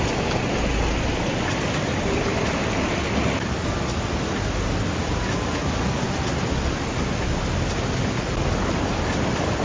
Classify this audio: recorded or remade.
recorded